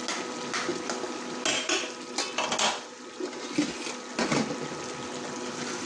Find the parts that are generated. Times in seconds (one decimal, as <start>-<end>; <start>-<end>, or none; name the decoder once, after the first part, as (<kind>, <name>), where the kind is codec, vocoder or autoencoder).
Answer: none